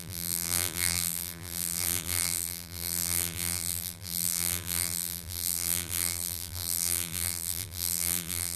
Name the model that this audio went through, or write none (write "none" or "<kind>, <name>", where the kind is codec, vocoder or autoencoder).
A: vocoder, BigVGAN v2